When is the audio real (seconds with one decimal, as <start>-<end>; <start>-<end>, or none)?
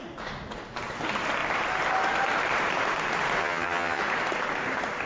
0.0-3.4; 4.0-5.1